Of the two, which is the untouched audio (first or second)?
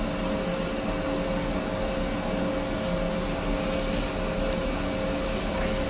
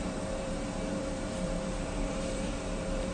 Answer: first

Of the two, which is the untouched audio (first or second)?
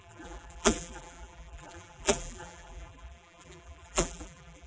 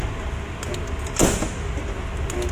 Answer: second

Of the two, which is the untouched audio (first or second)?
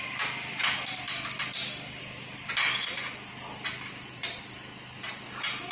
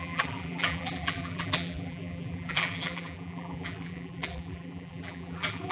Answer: first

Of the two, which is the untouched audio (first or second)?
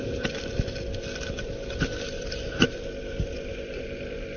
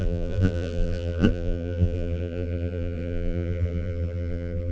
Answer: first